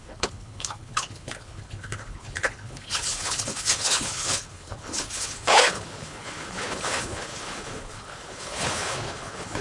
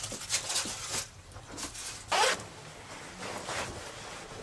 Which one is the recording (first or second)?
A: second